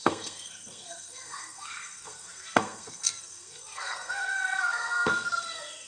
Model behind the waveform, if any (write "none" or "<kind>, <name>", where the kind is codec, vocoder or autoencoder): codec, SNAC